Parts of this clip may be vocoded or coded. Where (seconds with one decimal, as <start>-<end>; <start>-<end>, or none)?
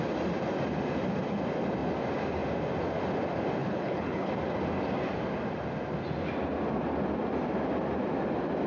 3.6-4.3